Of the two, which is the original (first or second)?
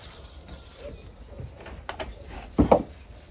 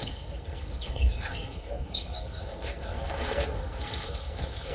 first